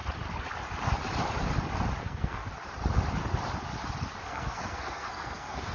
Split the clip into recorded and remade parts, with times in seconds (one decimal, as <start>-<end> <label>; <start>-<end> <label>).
0.0-2.0 recorded; 2.0-2.4 remade; 2.4-4.2 recorded; 4.2-5.7 remade